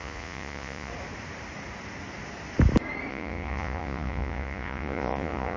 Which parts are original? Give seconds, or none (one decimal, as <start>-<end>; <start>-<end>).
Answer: 0.9-3.1